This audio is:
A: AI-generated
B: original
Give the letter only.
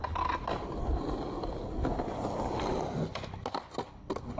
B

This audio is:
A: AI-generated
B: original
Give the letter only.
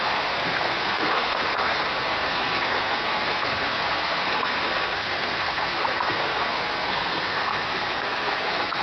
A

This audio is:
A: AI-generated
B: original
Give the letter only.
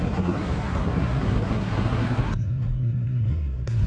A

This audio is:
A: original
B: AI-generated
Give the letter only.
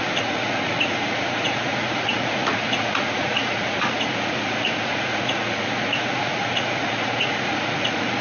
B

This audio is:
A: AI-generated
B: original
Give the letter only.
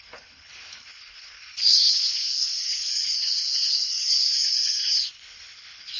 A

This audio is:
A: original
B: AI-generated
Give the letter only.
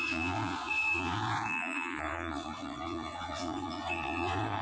B